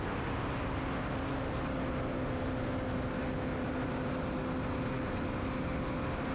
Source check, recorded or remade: recorded